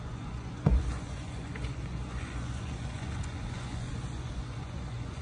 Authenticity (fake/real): fake